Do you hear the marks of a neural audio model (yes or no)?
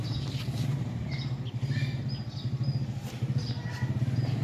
no